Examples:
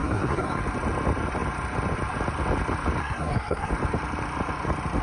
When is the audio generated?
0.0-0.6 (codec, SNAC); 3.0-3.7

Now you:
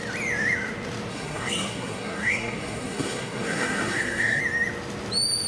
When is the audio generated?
1.1-4.4 (codec, SNAC)

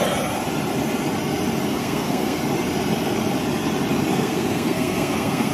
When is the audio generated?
1.7-2.4 (codec, SNAC); 4.1-5.5

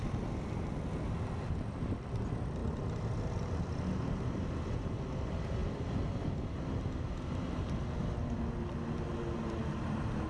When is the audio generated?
none

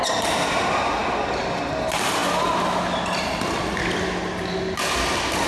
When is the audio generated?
none

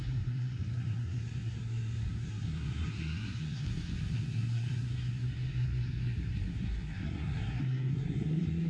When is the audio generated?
0.0-8.7 (codec, SNAC)